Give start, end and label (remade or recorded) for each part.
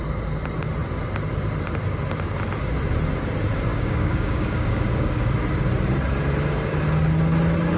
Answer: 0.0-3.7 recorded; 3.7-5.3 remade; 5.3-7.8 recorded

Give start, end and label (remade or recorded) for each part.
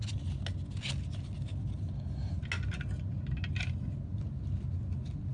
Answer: 0.0-5.3 recorded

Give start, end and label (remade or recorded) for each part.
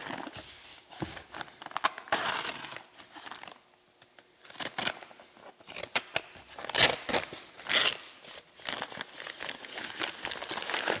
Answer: 0.0-0.7 recorded; 0.7-1.4 remade; 1.4-11.0 recorded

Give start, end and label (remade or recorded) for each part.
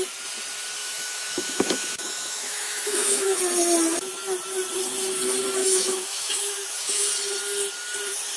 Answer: 0.0-0.8 recorded; 0.8-3.4 remade; 3.4-5.6 recorded; 5.6-7.1 remade; 7.1-8.4 recorded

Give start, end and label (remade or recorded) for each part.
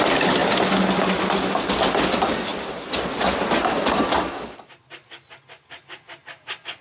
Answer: 0.0-6.8 recorded